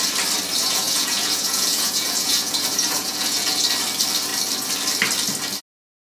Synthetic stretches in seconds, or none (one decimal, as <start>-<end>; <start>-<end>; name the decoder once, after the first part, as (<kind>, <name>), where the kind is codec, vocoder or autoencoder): 0.6-3.6 (vocoder, Vocos)